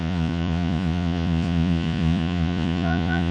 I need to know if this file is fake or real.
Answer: fake